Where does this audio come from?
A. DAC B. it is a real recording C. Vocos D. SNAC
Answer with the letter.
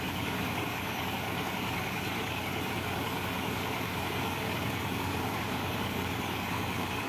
A